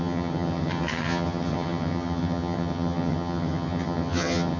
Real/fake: fake